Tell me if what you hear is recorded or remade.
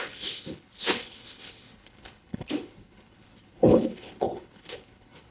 remade